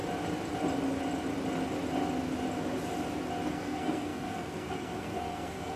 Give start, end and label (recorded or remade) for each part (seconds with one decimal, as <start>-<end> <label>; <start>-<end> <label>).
0.0-3.5 recorded; 3.5-5.8 remade